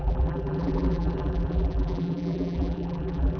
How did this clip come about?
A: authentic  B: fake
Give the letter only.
B